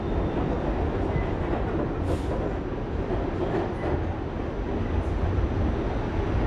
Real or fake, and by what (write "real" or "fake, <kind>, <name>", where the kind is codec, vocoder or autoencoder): real